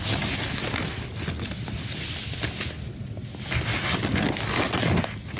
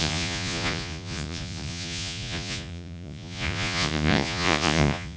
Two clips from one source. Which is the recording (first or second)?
first